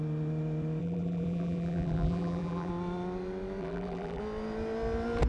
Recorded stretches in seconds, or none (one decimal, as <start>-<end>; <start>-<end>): 0.0-0.8; 2.7-3.6; 4.2-5.3